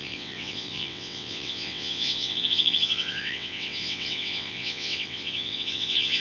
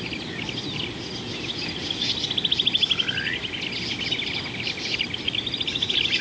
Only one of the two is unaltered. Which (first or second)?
second